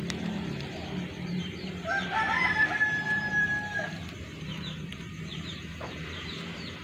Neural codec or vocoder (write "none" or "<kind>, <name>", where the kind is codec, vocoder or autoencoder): vocoder, BigVGAN v2